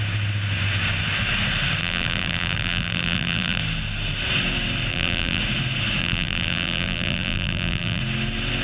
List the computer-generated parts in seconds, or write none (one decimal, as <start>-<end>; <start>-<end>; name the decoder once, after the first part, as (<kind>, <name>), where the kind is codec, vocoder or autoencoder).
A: 1.8-3.6 (vocoder, BigVGAN v2); 4.9-5.4; 6.0-8.0